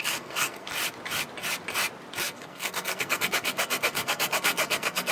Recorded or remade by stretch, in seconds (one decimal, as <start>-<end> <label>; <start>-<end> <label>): 0.0-0.7 remade; 0.7-2.2 recorded; 2.2-5.1 remade